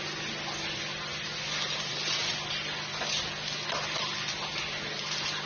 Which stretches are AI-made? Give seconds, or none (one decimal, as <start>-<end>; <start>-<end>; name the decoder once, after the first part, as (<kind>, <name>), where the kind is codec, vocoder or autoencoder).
none